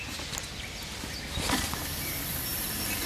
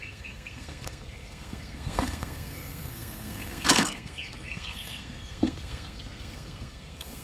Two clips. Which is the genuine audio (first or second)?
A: first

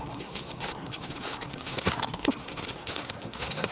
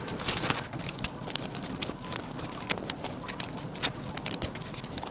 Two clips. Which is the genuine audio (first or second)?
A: second